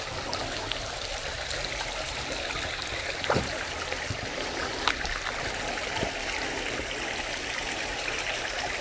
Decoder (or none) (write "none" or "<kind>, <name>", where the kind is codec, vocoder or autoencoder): none